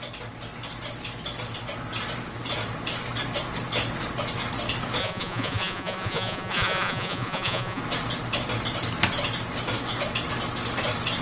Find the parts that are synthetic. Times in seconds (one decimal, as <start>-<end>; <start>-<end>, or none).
5.0-7.8